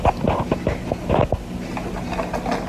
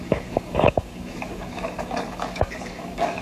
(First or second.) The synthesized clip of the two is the second